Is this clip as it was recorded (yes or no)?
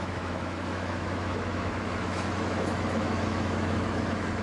no